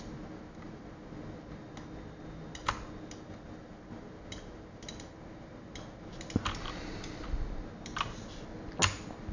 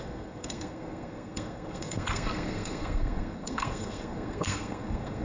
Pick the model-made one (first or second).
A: second